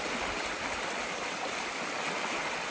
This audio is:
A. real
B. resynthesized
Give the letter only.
A